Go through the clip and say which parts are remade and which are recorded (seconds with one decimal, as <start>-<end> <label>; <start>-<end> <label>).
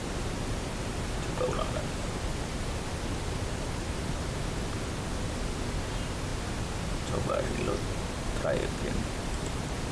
0.0-9.9 recorded